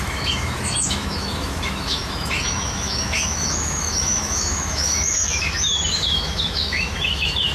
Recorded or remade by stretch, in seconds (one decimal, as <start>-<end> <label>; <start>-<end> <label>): 0.0-7.5 remade